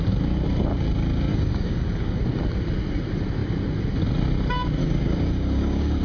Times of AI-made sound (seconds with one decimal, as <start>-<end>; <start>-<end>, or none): 1.3-2.2; 4.8-6.0